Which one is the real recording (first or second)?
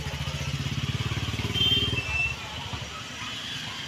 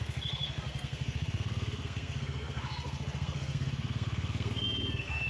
first